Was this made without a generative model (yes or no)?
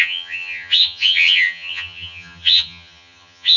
no